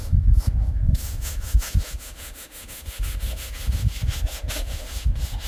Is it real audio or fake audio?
fake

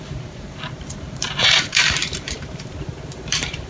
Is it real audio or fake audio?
fake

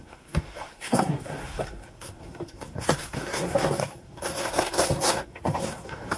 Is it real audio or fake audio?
fake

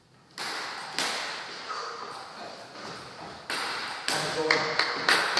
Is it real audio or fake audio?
real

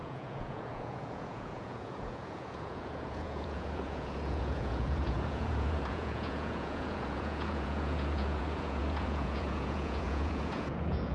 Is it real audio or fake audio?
fake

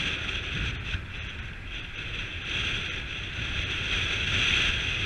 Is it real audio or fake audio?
real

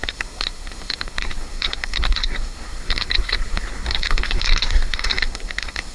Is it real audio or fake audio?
fake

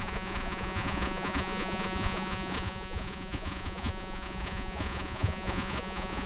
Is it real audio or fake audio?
fake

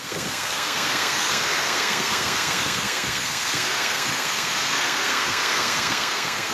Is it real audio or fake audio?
fake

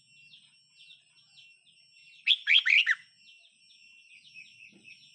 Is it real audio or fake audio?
real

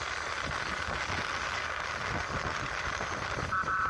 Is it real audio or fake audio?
real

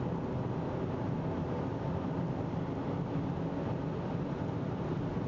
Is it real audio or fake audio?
real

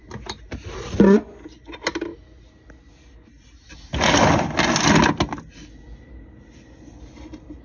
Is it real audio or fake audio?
real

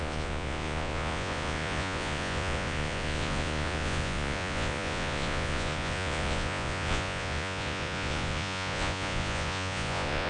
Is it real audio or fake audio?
fake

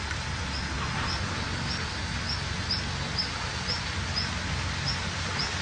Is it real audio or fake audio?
real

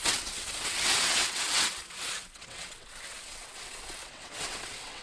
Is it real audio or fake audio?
fake